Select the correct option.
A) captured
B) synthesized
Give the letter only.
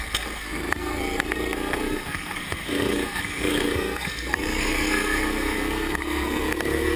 B